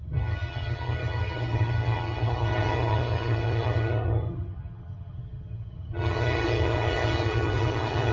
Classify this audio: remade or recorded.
remade